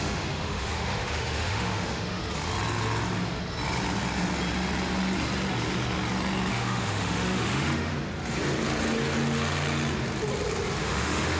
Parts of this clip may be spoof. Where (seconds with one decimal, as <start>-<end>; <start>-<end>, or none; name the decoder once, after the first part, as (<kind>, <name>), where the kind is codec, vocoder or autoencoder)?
0.0-2.2 (autoencoder, DAC-VAE); 6.5-7.9; 10.8-11.4